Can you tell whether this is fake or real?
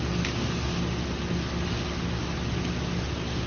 real